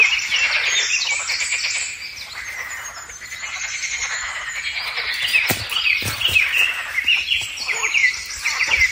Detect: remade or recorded recorded